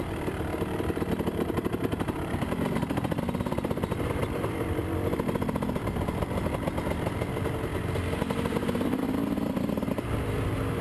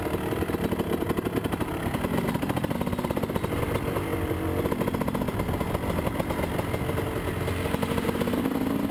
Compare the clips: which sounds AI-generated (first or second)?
first